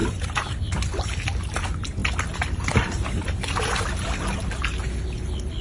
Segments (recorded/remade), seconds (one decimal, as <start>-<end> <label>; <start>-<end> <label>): 0.0-0.6 remade; 0.6-2.0 recorded; 2.0-3.2 remade; 3.2-5.6 recorded